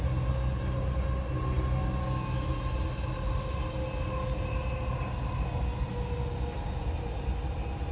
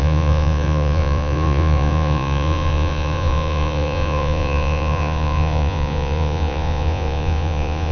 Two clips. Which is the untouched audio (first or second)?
first